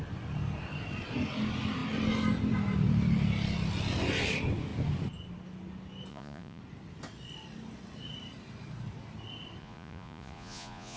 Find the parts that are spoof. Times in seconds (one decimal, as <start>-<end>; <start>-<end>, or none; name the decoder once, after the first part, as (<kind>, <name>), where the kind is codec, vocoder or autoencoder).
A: 6.1-6.6 (vocoder, Vocos); 9.6-11.0